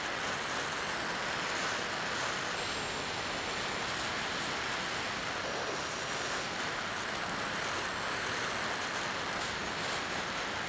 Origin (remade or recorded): recorded